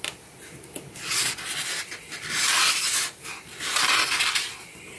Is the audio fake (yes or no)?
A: no